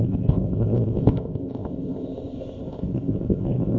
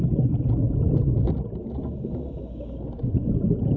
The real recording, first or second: second